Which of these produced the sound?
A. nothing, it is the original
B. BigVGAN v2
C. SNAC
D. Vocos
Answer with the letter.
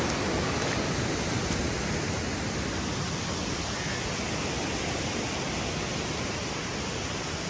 A